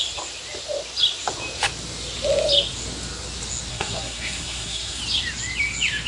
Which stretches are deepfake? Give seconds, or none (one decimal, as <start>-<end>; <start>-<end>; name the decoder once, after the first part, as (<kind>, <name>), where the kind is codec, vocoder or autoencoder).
3.7-5.0 (codec, SNAC)